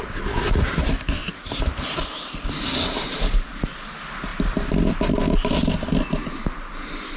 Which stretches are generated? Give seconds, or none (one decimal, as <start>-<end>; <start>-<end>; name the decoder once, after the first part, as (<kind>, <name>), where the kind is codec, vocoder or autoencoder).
1.2-1.8 (vocoder, BigVGAN v2)